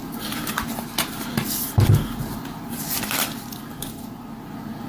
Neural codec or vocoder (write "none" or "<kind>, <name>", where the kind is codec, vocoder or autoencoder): none